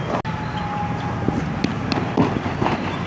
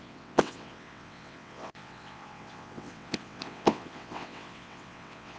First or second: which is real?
first